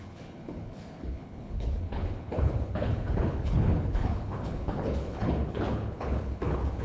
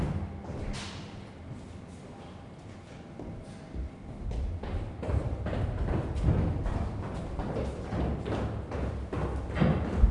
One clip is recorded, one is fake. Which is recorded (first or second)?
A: second